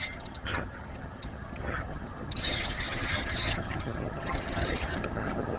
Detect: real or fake fake